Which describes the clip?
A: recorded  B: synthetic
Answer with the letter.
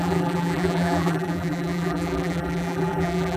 B